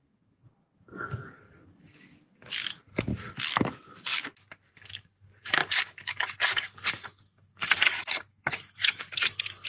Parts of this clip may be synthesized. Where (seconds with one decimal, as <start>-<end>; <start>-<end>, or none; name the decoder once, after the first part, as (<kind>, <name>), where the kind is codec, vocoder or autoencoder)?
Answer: 0.0-3.1 (codec, DAC); 4.7-9.7